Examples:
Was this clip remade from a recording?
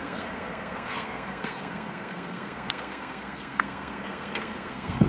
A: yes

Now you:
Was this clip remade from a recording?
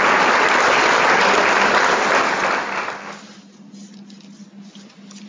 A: no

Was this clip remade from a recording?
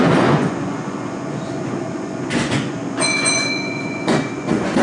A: yes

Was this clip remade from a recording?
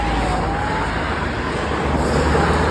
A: no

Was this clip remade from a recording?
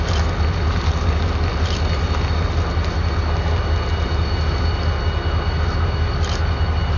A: no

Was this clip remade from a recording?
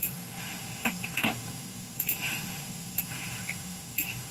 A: yes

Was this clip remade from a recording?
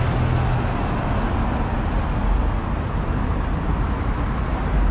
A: no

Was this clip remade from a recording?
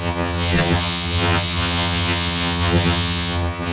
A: yes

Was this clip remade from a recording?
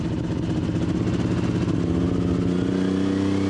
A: no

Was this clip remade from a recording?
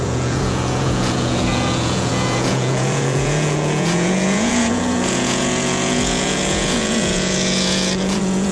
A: yes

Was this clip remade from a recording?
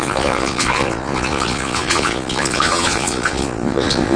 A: yes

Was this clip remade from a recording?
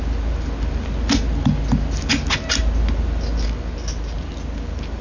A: no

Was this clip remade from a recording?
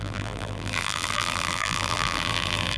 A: yes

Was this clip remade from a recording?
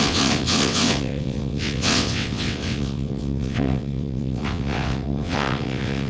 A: yes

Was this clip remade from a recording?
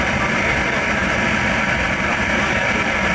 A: yes